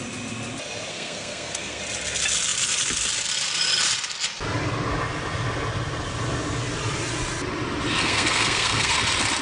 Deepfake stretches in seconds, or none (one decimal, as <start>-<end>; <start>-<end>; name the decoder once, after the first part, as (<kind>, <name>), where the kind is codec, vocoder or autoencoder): 0.9-1.8 (codec, SNAC); 8.0-8.9